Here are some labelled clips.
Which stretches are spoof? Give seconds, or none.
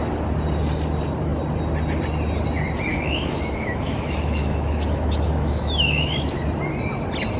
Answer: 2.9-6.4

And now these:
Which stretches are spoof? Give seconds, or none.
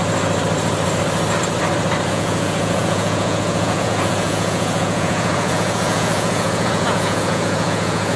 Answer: 2.1-8.2